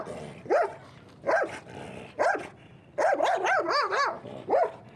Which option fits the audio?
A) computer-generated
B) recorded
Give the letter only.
B